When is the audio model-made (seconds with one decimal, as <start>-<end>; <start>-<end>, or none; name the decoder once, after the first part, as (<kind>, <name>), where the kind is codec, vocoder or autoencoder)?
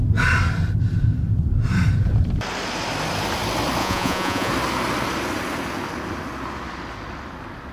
3.8-4.5 (vocoder, Vocos)